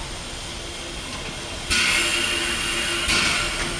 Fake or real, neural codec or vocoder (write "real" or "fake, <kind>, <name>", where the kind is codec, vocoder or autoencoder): real